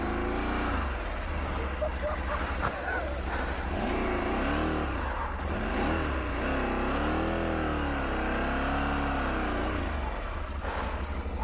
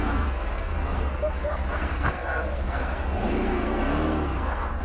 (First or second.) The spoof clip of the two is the second